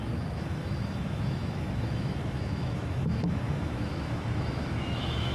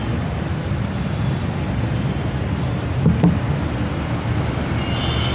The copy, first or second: first